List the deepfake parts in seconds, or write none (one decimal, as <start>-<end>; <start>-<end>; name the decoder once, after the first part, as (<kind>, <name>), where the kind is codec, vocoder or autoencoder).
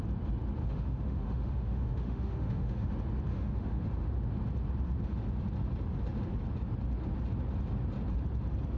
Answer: 0.6-2.9 (autoencoder, DAC-VAE); 3.3-3.8